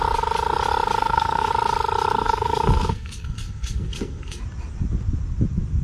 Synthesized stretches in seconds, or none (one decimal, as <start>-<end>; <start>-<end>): 1.0-1.5; 2.2-4.4